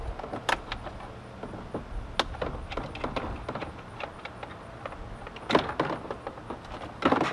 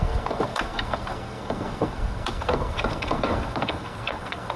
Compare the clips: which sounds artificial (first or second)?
second